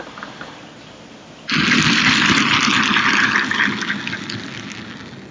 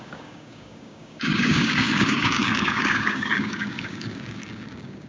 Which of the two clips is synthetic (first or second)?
second